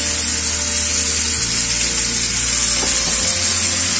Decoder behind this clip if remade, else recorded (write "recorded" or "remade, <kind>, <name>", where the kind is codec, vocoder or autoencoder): recorded